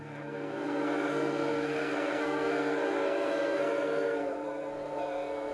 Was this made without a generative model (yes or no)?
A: no